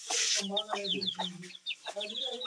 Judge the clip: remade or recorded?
remade